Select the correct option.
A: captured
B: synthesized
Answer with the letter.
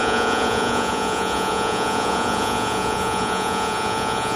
B